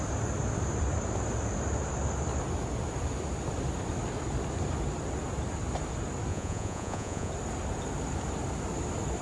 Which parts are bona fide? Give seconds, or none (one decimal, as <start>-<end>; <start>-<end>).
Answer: 0.0-6.3; 7.3-9.2